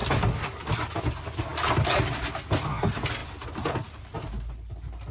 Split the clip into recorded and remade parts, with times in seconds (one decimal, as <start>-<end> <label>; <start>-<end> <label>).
0.0-5.1 recorded